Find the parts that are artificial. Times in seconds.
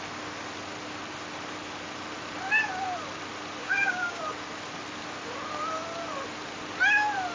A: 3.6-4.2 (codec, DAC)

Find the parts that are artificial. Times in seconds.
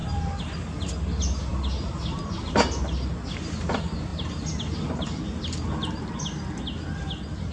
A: none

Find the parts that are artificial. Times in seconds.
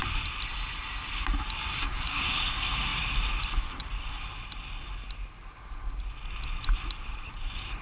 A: 1.6-2.2 (codec, DAC)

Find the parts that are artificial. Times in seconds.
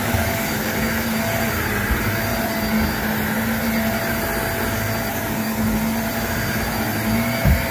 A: 0.0-0.8 (codec, DAC); 5.1-5.7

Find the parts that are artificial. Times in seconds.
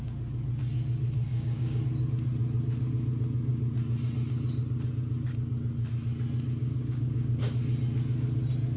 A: 1.3-1.8 (codec, DAC); 6.6-7.4